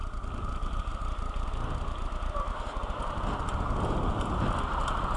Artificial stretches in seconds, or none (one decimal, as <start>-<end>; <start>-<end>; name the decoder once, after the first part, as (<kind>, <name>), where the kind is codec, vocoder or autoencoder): 0.0-0.5 (vocoder, BigVGAN v2); 0.9-3.3